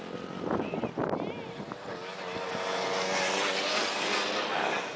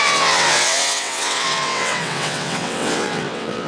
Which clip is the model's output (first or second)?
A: second